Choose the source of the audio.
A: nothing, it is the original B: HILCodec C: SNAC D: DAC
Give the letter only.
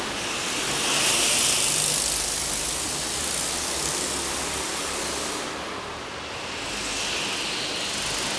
A